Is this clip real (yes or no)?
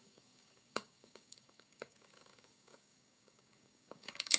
no